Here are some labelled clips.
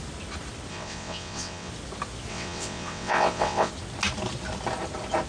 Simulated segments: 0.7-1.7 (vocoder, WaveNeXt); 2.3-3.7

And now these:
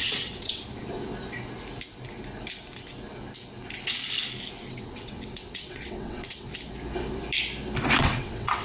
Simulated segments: 0.0-0.6 (vocoder, WaveNeXt); 4.7-6.5; 8.0-8.6